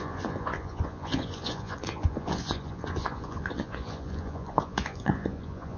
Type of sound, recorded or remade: remade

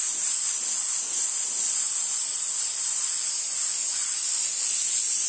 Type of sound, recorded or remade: recorded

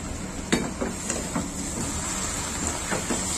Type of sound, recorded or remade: recorded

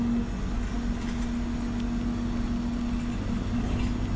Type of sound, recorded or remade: recorded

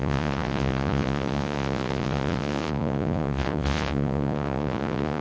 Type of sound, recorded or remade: remade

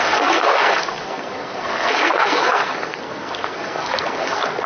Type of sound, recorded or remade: remade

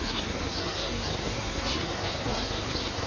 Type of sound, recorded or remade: remade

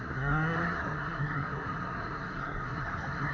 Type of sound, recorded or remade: remade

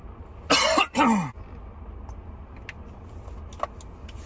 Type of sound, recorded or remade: recorded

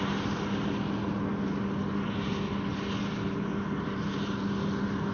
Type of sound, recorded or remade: recorded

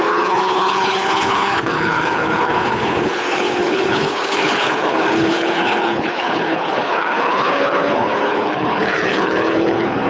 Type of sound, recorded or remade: remade